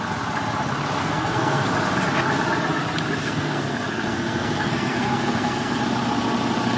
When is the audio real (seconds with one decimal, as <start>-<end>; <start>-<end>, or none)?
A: 0.0-1.0; 1.7-3.2; 5.8-6.8